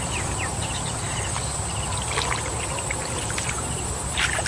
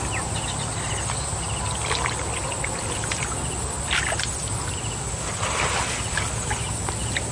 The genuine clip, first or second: second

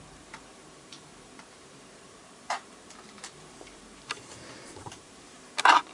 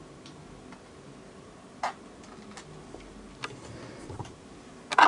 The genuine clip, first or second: second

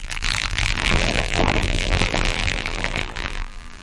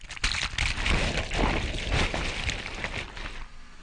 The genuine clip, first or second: second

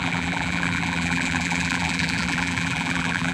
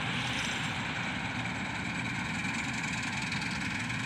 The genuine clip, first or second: second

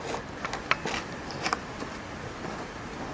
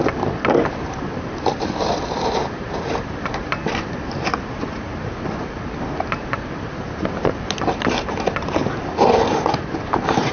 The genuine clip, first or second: first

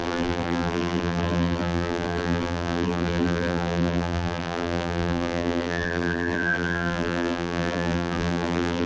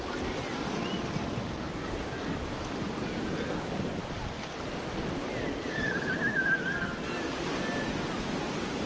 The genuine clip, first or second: second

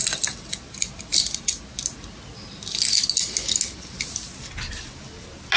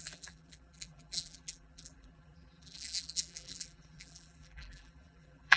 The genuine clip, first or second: first